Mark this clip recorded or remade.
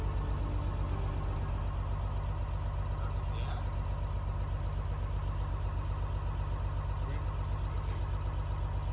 recorded